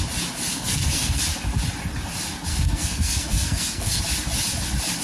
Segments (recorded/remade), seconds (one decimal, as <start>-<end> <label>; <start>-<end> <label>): 0.0-0.5 recorded; 0.5-1.2 remade; 1.2-2.5 recorded; 2.5-4.0 remade; 4.0-5.0 recorded